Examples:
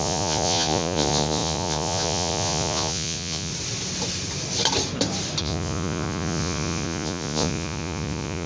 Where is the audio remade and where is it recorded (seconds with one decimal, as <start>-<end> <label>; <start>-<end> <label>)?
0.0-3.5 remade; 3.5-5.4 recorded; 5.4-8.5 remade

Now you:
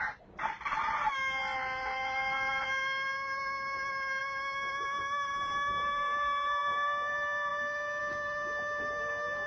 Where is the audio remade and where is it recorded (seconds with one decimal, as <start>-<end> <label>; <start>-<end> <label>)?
0.0-9.5 recorded

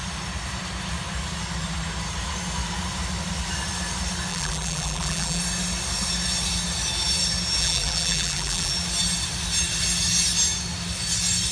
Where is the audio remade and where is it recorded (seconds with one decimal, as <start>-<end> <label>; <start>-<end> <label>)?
0.0-4.3 recorded; 4.3-5.4 remade; 5.4-7.6 recorded; 7.6-8.7 remade; 8.7-11.5 recorded

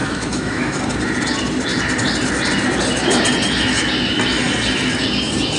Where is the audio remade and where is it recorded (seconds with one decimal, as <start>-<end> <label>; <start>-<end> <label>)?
0.0-0.8 remade; 0.8-5.6 recorded

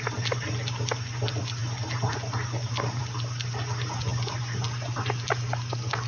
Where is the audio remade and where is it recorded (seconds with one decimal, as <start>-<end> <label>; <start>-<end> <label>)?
0.0-6.1 recorded